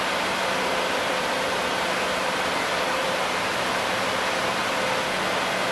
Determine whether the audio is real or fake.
real